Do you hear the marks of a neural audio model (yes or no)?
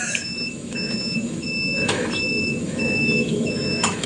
yes